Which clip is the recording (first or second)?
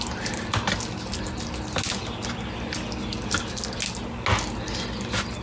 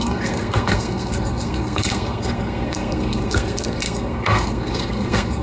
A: first